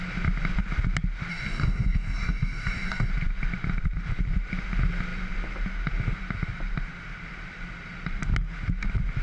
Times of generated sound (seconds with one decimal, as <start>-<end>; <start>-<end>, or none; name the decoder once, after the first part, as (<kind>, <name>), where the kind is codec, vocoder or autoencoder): 1.3-3.1 (codec, DAC)